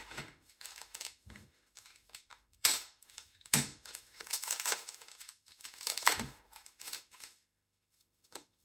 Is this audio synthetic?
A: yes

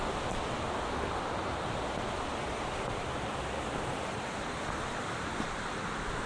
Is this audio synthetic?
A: no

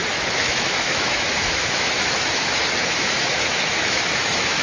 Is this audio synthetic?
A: yes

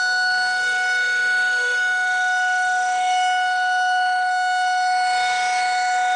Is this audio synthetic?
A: yes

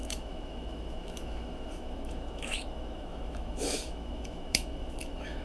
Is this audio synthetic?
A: yes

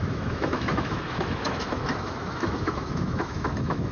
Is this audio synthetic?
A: yes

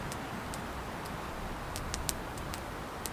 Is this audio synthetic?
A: no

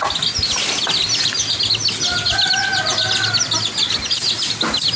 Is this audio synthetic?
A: no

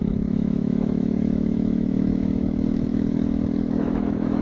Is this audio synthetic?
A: yes